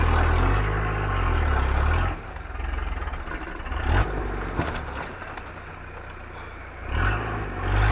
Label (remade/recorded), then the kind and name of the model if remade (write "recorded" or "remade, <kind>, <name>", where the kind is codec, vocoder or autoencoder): recorded